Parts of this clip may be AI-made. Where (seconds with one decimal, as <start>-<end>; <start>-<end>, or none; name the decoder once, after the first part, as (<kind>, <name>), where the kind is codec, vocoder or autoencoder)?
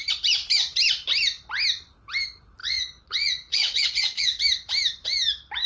2.6-4.4 (vocoder, Vocos)